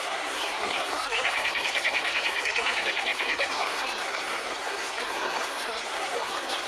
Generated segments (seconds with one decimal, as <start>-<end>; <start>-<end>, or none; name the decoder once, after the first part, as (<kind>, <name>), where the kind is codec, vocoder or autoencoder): 0.0-6.7 (codec, SNAC)